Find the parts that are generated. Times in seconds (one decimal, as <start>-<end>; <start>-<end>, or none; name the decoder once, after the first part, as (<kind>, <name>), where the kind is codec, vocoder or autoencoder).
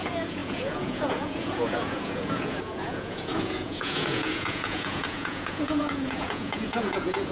0.0-7.3 (vocoder, Vocos)